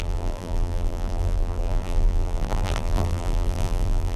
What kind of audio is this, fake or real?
fake